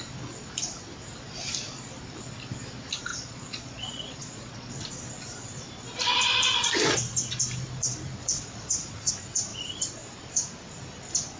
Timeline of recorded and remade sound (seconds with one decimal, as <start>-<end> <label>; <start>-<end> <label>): 0.0-3.1 recorded; 3.1-4.7 remade; 4.7-8.2 recorded; 8.2-9.1 remade; 9.1-11.4 recorded